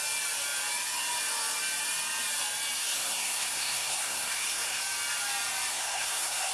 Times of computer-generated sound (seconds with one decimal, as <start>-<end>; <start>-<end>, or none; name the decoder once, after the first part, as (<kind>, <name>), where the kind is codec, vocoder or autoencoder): 2.8-4.8 (codec, SNAC); 5.7-6.5